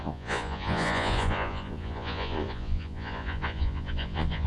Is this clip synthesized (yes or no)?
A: yes